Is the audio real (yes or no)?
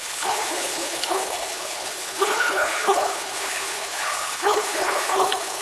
no